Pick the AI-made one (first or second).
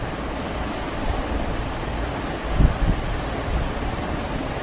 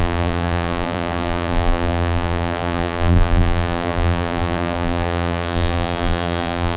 second